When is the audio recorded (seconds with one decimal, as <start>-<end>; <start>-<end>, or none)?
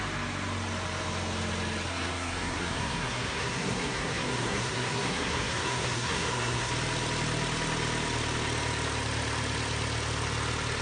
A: 0.0-1.9; 6.7-10.8